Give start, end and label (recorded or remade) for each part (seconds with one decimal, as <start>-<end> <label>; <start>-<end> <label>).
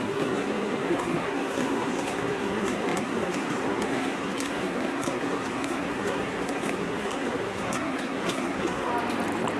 0.0-8.9 remade; 8.9-9.6 recorded